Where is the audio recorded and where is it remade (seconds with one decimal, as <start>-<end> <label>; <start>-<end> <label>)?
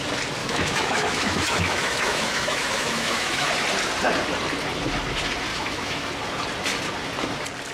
0.0-0.4 recorded; 0.4-3.5 remade; 3.5-5.5 recorded; 5.5-6.1 remade; 6.1-7.7 recorded